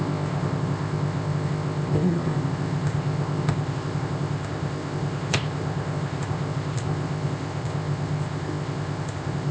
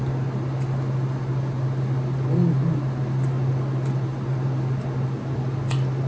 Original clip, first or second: second